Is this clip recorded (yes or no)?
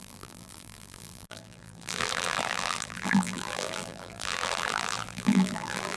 no